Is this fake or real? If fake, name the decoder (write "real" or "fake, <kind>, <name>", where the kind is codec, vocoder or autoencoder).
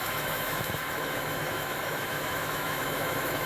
fake, autoencoder, DAC-VAE